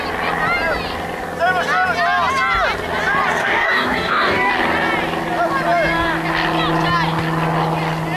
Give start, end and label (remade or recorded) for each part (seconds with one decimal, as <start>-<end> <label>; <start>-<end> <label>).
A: 0.0-3.4 recorded; 3.4-4.5 remade; 4.5-8.2 recorded

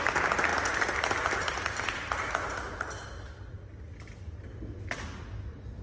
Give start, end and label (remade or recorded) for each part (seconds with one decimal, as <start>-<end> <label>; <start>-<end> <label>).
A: 0.0-5.8 recorded

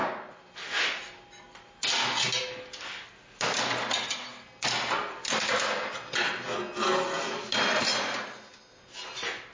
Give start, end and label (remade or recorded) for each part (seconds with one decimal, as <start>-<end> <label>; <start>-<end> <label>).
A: 0.0-9.5 recorded

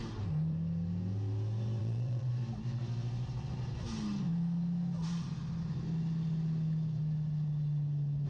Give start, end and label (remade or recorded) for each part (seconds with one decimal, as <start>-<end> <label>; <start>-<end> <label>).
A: 0.0-1.8 recorded; 1.8-2.3 remade; 2.3-8.3 recorded

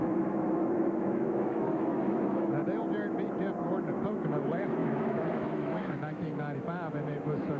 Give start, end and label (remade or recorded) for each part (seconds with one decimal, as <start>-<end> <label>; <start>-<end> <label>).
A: 0.0-2.5 remade; 2.5-4.1 recorded; 4.1-7.6 remade

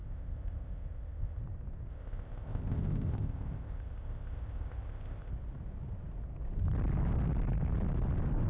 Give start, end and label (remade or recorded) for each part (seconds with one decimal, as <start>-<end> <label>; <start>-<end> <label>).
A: 0.0-1.4 remade; 1.4-1.9 recorded; 1.9-5.3 remade; 5.3-8.5 recorded